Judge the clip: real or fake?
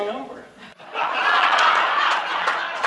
fake